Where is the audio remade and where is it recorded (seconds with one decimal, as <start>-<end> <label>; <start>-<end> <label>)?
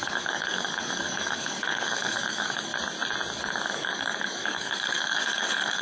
0.0-2.7 remade; 2.7-3.4 recorded; 3.4-5.8 remade